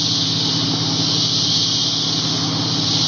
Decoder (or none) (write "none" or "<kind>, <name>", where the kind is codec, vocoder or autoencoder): none